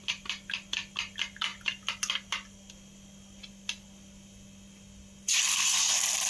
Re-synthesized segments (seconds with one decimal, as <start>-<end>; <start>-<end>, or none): none